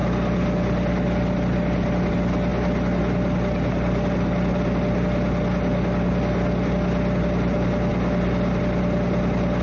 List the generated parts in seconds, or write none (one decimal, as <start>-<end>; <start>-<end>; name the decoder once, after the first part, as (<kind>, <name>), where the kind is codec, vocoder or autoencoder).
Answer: none